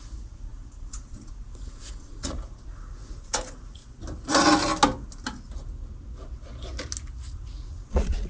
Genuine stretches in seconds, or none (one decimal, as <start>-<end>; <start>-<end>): 3.8-7.4